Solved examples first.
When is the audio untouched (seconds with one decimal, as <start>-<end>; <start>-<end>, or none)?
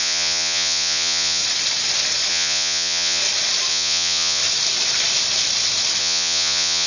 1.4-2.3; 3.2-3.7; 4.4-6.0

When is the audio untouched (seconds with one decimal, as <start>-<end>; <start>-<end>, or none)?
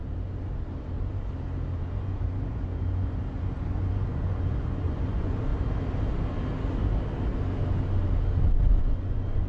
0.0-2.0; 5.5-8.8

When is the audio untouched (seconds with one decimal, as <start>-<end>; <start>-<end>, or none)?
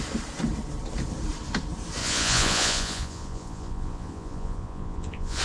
0.0-2.0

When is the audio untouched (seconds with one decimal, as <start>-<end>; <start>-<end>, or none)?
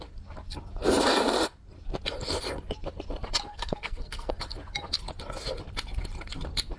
0.0-3.5; 4.3-6.8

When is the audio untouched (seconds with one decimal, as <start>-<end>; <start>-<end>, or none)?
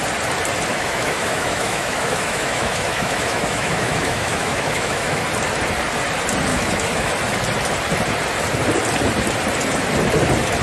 0.0-0.7; 5.2-6.5; 7.1-10.6